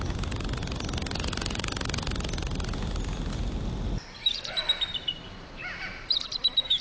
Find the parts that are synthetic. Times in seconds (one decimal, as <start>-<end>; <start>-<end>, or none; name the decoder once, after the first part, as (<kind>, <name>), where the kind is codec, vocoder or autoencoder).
0.0-6.8 (vocoder, BigVGAN v2)